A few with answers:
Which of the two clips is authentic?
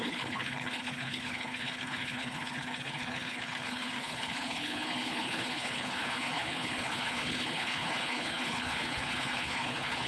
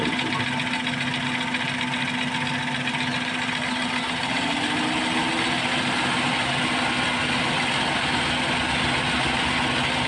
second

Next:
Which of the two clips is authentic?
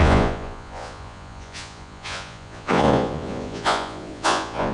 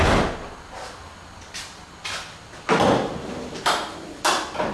second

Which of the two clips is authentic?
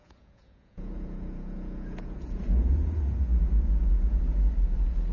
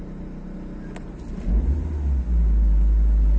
second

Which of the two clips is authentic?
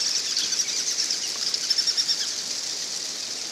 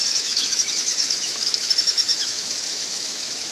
first